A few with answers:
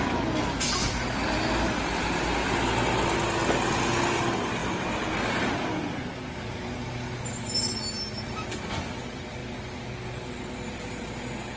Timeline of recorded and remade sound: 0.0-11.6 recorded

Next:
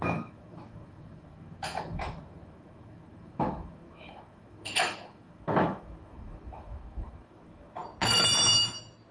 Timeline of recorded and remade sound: 0.0-7.8 remade; 7.8-9.1 recorded

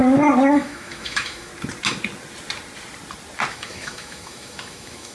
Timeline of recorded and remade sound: 0.0-0.5 recorded; 0.5-1.5 remade; 1.5-3.5 recorded; 3.5-5.1 remade

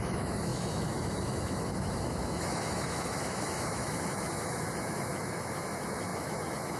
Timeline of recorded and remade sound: 0.0-6.8 remade